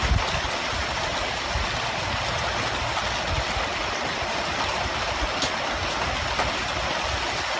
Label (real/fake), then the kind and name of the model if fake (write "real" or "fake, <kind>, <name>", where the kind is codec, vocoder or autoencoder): real